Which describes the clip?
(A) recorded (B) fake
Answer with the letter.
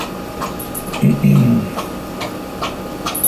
A